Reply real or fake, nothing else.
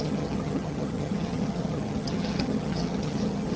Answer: fake